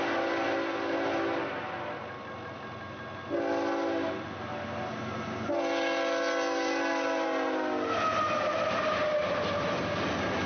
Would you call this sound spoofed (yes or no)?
no